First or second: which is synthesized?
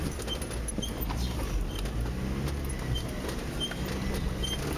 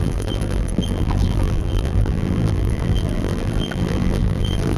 second